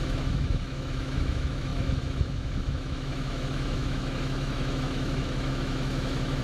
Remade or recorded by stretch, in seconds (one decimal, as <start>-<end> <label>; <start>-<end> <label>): 0.0-6.4 remade